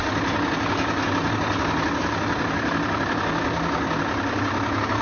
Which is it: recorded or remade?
recorded